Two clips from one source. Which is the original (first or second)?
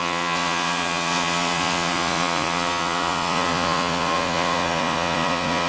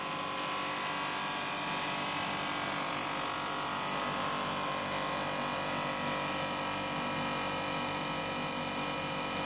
second